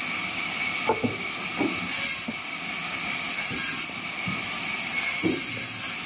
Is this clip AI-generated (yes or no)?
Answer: no